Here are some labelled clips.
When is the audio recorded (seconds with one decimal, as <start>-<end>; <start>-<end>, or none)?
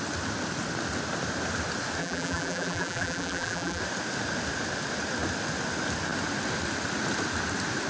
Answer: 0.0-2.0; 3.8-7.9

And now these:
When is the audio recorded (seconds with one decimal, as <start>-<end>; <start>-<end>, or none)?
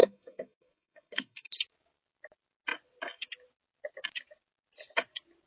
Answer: 1.5-5.5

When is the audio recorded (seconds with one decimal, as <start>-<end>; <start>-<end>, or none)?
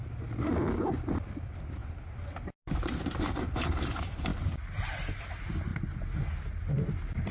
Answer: 0.0-7.3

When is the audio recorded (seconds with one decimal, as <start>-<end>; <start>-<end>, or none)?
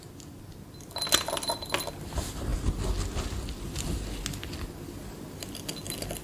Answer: 0.0-6.2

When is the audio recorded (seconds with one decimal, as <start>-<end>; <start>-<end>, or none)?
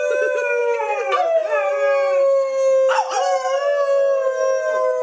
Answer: 0.0-5.0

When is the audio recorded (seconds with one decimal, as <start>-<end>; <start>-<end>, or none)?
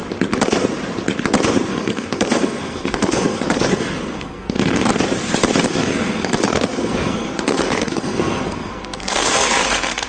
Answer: 0.0-1.7; 4.9-5.6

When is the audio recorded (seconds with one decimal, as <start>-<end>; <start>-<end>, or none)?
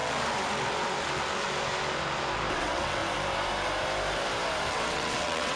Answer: 0.0-2.5; 3.0-4.7